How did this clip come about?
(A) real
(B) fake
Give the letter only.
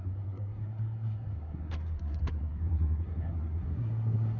B